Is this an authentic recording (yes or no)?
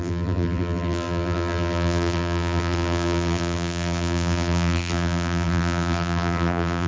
no